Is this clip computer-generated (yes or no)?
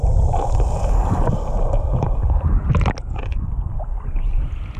no